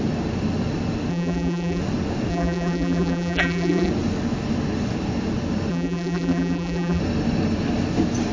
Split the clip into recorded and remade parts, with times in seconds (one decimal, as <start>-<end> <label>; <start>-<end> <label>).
0.0-1.1 recorded; 1.1-1.8 remade; 1.8-2.3 recorded; 2.3-3.9 remade; 3.9-5.7 recorded; 5.7-7.0 remade; 7.0-8.3 recorded